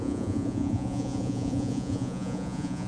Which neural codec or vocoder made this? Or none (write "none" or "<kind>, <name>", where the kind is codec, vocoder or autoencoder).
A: vocoder, Vocos